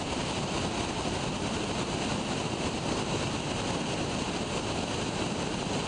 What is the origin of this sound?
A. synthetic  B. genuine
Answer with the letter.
B